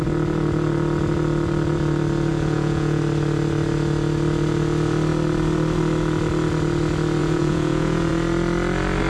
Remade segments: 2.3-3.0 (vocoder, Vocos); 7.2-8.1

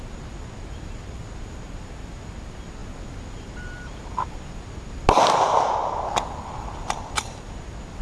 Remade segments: none

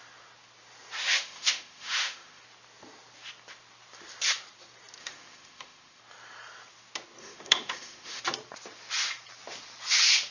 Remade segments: 1.0-2.4 (autoencoder, DAC-VAE); 5.0-6.0; 7.2-8.2

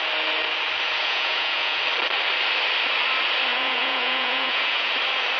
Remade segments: 1.0-1.8 (vocoder, Vocos); 3.5-4.9

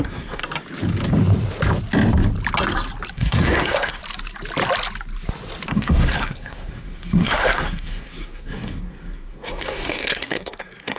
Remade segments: 0.0-0.4 (codec, SNAC); 3.1-4.0; 5.7-11.0

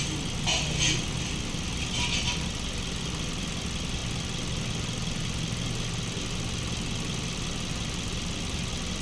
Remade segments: none